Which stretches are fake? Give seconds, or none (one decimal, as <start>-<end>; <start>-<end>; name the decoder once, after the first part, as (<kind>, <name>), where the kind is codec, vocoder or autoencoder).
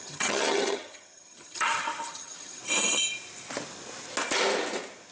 0.0-2.6 (vocoder, HiFi-GAN)